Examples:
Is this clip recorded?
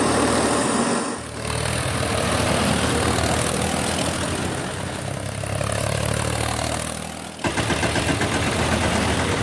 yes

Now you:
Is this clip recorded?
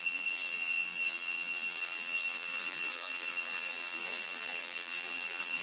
no